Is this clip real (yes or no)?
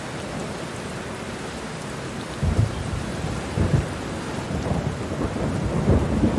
yes